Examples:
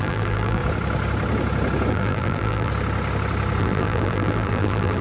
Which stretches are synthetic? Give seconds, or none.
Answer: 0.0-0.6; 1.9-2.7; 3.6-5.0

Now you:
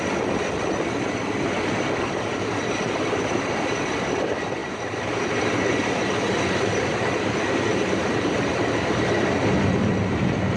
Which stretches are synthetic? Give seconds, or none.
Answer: 4.6-6.8; 7.7-9.0

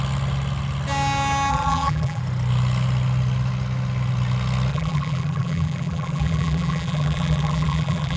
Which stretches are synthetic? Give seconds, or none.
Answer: 1.5-2.2; 4.7-8.2

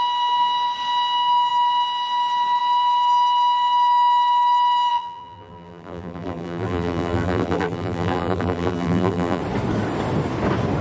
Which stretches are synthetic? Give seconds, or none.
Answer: 4.9-9.4

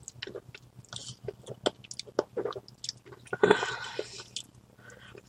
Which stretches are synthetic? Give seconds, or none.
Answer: none

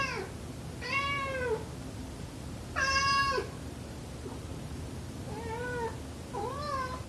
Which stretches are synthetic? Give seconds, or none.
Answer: 3.0-4.8

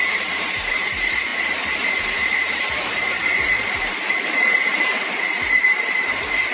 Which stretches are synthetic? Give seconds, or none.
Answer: 0.0-6.5

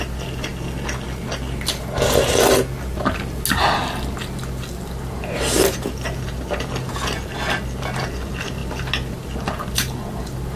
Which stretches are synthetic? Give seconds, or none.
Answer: none